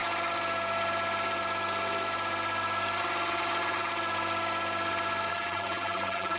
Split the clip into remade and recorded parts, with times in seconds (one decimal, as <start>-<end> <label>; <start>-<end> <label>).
0.0-5.3 recorded; 5.3-6.4 remade